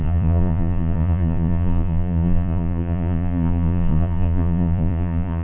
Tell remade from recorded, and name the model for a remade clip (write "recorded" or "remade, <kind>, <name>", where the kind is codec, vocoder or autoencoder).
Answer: remade, vocoder, Vocos